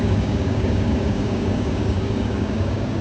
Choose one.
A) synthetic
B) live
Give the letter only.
A